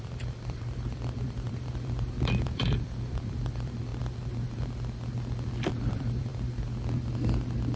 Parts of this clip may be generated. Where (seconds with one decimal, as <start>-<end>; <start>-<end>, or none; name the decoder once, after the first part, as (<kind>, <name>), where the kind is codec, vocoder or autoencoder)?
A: 0.0-3.9 (vocoder, BigVGAN v2); 5.7-6.3